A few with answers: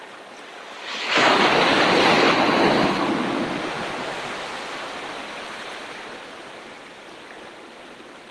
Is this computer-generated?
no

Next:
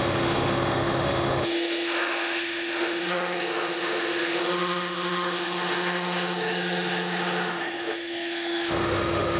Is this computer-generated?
yes